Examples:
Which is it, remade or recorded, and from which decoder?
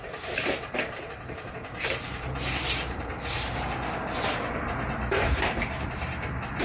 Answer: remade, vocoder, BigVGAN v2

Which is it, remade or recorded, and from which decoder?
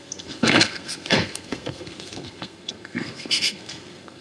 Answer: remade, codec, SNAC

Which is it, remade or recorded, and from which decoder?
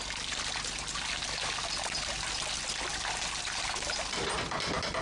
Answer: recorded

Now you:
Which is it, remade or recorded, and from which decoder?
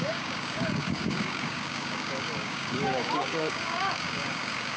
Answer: remade, codec, DAC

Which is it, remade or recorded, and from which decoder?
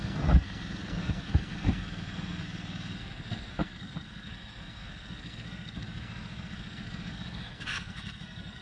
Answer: remade, codec, SNAC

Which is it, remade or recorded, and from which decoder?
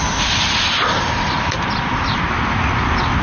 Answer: recorded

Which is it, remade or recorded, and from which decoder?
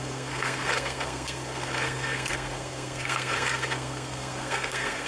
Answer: remade, codec, SNAC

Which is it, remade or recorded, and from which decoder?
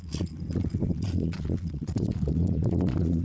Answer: remade, vocoder, Vocos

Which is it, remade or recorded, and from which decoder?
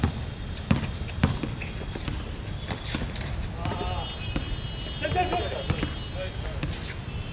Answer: recorded